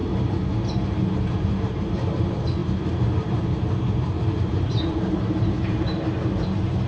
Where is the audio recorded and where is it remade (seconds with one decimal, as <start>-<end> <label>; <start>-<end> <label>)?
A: 0.0-6.9 remade